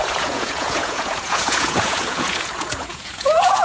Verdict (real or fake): fake